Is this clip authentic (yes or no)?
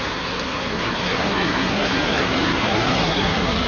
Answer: no